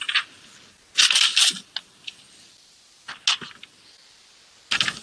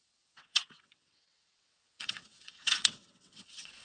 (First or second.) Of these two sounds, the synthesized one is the second